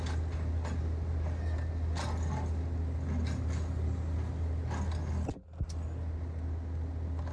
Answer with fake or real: real